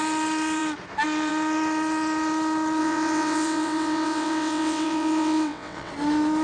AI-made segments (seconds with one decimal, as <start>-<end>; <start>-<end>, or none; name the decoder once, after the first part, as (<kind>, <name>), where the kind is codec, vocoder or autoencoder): 2.8-5.9 (vocoder, WaveNeXt)